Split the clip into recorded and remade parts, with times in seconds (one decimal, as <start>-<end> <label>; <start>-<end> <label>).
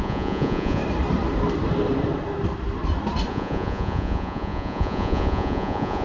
0.0-0.8 remade; 0.8-3.3 recorded; 3.3-6.0 remade